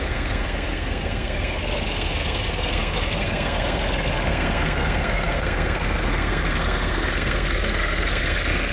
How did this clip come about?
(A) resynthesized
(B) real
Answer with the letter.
A